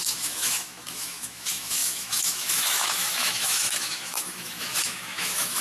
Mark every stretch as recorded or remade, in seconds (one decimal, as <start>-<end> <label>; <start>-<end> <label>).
0.0-5.6 remade